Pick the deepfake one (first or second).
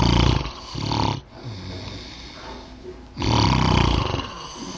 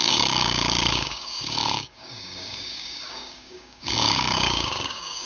second